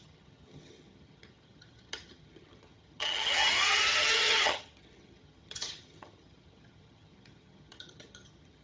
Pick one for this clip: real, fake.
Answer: fake